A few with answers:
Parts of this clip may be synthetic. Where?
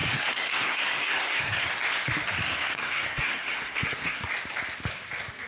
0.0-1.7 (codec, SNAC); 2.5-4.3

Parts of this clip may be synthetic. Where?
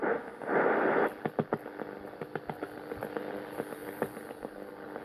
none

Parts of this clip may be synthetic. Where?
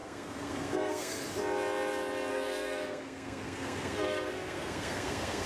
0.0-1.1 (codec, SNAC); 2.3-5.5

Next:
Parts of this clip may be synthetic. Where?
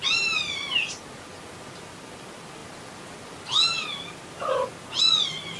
none